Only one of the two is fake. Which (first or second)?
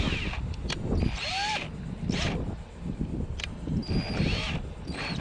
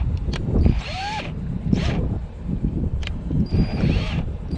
second